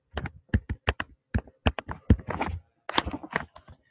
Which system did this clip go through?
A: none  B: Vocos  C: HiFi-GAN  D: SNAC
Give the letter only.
A